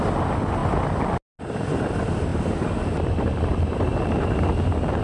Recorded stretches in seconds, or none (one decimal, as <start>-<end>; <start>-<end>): 0.0-2.3